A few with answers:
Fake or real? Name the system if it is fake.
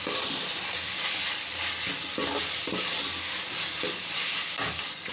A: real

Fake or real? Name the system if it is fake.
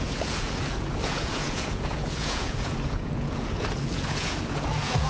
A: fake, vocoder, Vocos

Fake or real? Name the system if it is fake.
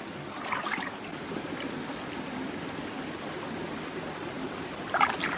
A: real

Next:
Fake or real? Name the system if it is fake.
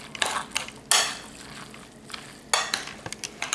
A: real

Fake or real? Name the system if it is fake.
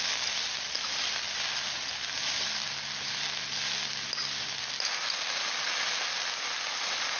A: real